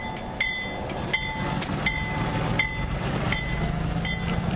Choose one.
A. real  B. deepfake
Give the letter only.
A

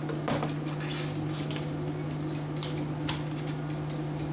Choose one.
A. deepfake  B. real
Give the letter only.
B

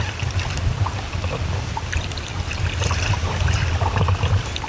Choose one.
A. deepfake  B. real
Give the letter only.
B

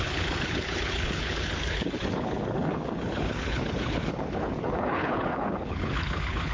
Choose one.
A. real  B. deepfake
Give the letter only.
B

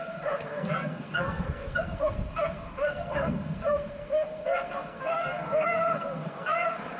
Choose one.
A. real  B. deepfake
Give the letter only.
B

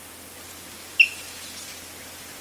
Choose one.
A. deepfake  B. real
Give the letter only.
B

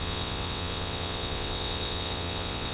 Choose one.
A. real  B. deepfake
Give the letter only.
B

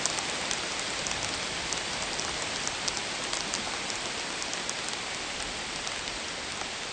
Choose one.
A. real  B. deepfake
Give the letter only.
A